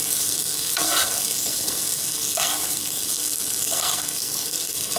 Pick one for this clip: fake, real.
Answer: fake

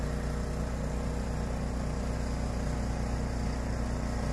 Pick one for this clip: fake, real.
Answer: real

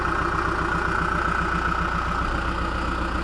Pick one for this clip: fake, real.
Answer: real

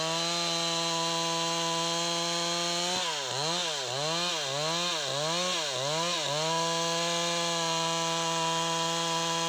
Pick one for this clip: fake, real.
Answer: real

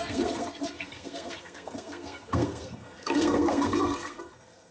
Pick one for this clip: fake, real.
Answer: fake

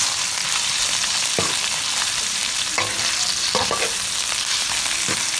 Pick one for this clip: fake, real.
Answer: real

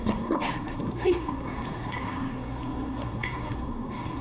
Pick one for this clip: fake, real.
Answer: fake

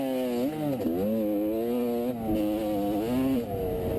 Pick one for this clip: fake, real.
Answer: real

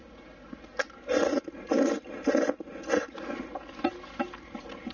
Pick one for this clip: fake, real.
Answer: real